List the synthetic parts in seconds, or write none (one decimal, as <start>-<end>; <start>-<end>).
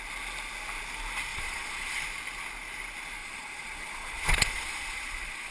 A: 1.3-2.0; 3.2-5.5